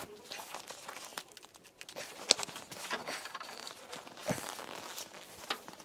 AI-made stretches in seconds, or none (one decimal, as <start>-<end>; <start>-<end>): 3.0-3.7